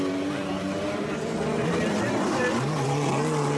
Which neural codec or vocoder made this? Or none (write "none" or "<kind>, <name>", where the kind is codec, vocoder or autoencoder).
none